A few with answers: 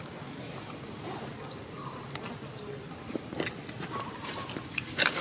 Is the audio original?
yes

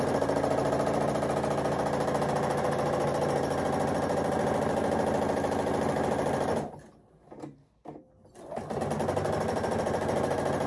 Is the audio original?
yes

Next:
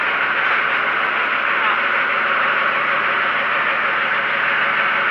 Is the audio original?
yes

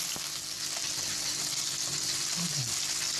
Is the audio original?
yes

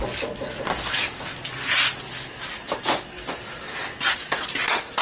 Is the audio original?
yes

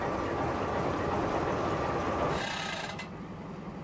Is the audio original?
yes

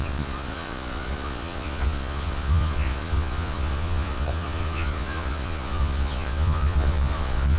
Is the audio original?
no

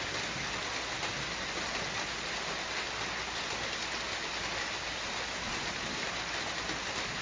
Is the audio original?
yes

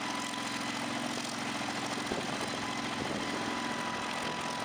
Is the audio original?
yes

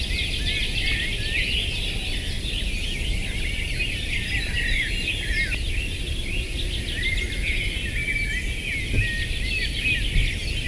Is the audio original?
yes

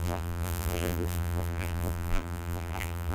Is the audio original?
no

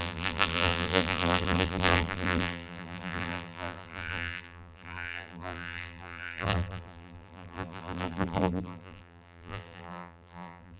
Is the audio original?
no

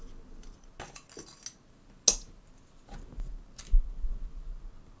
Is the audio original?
yes